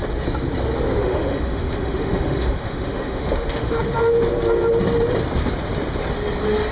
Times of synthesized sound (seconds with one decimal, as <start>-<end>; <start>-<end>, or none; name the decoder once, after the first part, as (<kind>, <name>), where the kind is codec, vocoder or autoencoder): 1.0-3.8 (autoencoder, DAC-VAE)